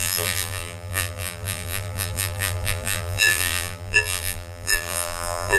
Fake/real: fake